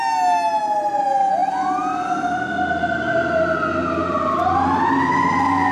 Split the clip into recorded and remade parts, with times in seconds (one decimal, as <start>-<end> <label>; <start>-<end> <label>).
0.0-5.7 recorded